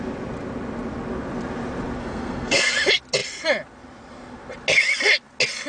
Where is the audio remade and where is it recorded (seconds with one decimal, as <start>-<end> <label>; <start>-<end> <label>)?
0.0-2.0 recorded; 2.0-2.7 remade; 2.7-5.7 recorded